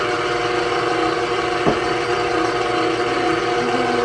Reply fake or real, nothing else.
real